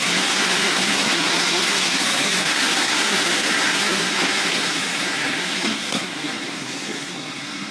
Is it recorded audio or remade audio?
remade